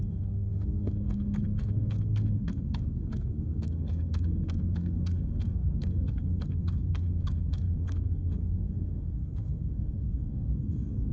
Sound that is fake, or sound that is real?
fake